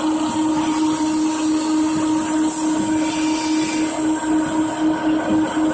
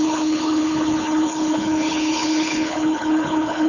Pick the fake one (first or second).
second